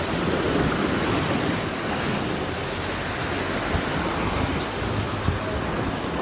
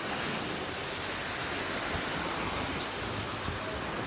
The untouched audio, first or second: first